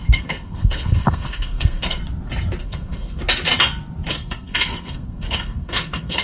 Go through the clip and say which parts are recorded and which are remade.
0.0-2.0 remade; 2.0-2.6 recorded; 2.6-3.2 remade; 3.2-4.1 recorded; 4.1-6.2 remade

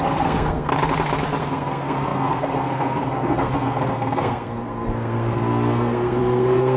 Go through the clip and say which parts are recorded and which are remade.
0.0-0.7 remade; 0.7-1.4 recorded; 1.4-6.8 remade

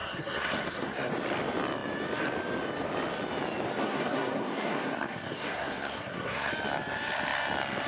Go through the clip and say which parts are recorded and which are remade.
0.0-1.1 remade; 1.1-3.8 recorded; 3.8-6.5 remade; 6.5-7.9 recorded